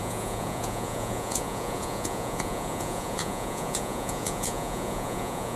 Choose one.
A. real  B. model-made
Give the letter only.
B